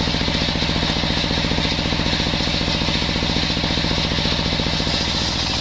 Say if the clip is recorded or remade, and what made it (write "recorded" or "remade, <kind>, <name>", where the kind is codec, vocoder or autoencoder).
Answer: recorded